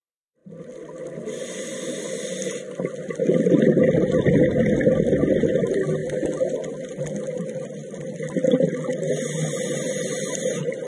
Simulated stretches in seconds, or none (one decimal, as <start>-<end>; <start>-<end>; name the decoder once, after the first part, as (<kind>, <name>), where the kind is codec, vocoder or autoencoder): none

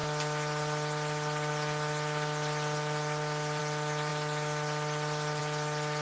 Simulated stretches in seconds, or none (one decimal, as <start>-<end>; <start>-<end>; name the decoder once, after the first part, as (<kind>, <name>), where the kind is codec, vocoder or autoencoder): none